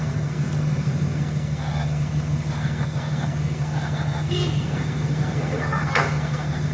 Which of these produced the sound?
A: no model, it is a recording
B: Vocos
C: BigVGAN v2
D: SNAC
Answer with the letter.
D